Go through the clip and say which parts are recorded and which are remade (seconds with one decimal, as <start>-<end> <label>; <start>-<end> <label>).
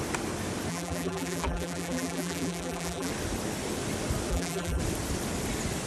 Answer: 0.0-0.7 recorded; 0.7-3.1 remade; 3.1-4.3 recorded; 4.3-4.8 remade; 4.8-5.9 recorded